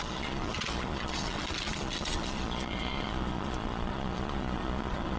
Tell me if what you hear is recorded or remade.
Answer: remade